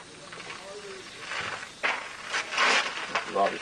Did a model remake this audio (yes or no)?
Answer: no